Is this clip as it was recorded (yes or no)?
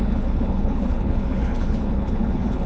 no